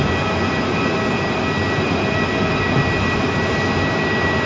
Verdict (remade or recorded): recorded